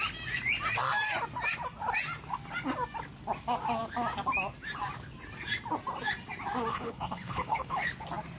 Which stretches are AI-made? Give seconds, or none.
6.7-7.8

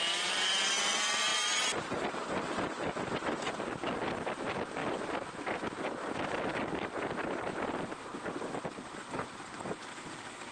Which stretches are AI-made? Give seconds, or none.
none

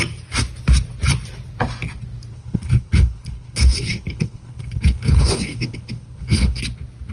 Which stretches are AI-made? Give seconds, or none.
2.3-6.6

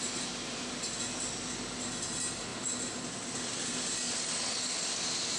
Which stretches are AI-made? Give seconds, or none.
none

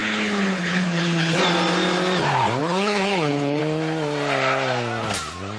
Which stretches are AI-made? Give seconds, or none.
0.0-1.4; 2.6-3.6

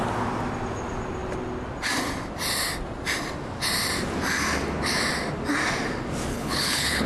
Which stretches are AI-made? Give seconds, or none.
6.3-7.1